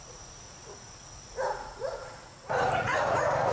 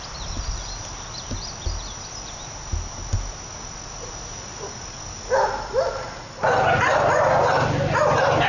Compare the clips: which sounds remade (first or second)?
first